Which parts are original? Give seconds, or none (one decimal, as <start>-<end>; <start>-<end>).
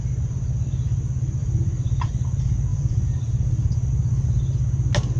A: 0.0-1.4; 2.1-2.7; 3.9-5.2